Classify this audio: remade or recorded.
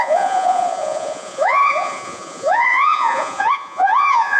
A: remade